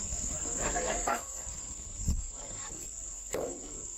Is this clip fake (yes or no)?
yes